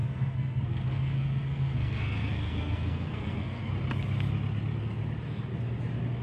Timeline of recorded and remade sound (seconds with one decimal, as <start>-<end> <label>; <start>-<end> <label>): 0.0-3.7 remade; 3.7-6.2 recorded